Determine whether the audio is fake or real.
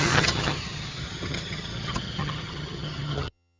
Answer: fake